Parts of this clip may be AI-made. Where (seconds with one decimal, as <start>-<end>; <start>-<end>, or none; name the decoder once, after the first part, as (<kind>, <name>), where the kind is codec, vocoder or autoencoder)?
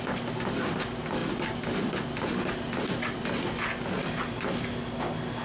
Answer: none